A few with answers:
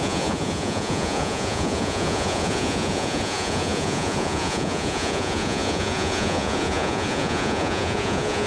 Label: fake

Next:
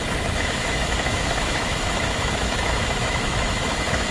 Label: fake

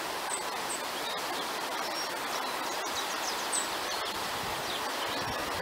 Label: real